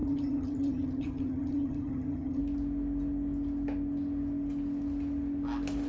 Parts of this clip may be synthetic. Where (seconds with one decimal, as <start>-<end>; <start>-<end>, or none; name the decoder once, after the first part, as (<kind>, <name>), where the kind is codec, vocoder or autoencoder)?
0.0-2.4 (vocoder, HiFi-GAN)